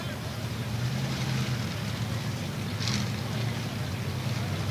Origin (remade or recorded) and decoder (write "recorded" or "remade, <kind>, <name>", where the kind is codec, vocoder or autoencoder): recorded